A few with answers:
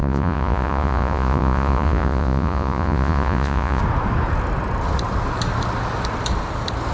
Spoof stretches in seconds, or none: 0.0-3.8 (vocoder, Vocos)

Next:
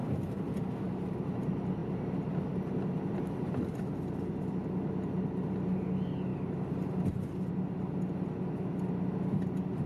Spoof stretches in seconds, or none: none

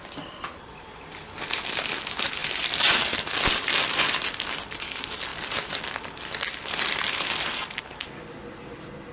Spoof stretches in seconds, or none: none

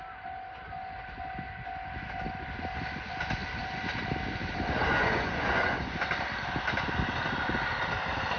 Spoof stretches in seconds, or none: 4.8-6.0 (vocoder, Vocos)